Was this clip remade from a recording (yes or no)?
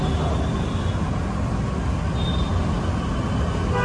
no